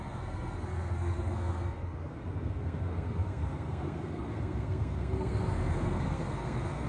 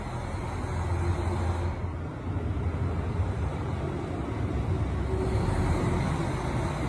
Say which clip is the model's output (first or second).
first